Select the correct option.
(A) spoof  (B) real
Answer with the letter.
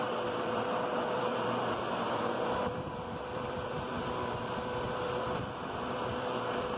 A